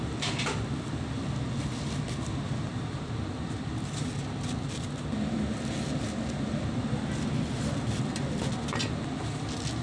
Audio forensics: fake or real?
real